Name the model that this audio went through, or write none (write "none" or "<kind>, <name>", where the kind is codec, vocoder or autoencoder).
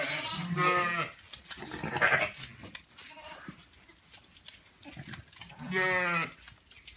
none